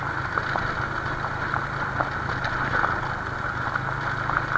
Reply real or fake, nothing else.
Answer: real